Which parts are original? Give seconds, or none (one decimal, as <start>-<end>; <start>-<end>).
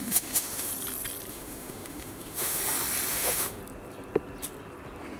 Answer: 0.7-1.3; 2.6-3.1; 3.6-5.2